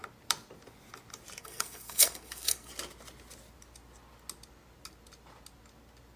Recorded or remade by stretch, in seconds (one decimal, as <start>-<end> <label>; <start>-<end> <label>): 0.0-1.4 recorded; 1.4-2.7 remade; 2.7-6.2 recorded